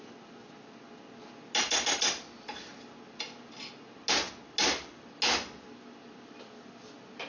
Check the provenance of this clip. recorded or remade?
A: recorded